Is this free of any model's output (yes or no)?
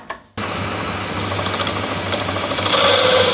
yes